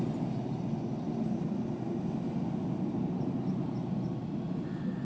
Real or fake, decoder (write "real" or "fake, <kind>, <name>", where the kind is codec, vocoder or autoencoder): real